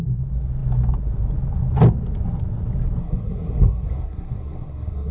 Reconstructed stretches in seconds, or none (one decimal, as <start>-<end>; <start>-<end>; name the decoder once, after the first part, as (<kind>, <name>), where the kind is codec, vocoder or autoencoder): 3.0-5.1 (codec, SNAC)